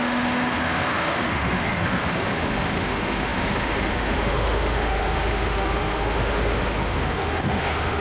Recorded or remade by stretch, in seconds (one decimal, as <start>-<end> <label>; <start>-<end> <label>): 0.0-8.0 remade